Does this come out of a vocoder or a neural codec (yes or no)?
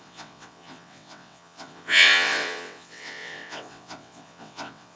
yes